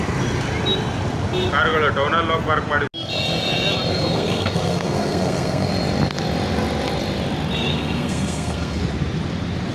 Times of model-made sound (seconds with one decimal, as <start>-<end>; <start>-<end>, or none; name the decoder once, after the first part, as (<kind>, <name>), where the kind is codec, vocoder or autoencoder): 3.9-5.7 (codec, SNAC); 7.7-8.8